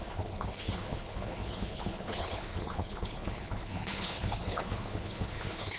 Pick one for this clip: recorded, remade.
remade